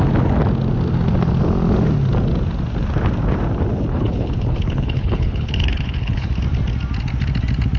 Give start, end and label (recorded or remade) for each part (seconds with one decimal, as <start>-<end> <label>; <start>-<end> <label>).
0.0-3.9 recorded; 3.9-6.3 remade; 6.3-7.8 recorded